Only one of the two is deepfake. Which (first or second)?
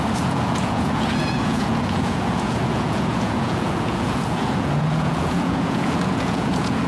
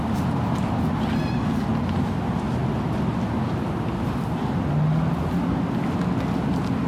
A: first